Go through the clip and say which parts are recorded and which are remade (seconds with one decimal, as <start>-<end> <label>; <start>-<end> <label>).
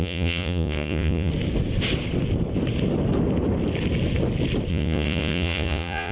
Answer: 0.0-1.3 remade; 1.3-4.7 recorded; 4.7-6.1 remade